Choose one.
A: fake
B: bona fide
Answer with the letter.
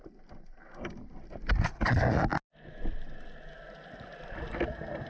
B